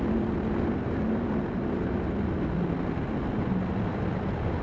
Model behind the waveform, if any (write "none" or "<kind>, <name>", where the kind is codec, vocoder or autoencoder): none